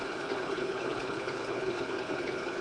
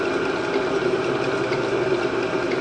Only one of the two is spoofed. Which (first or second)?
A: first